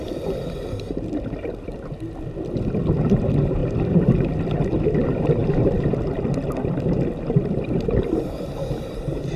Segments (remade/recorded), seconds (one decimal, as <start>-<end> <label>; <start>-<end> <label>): 0.0-9.4 recorded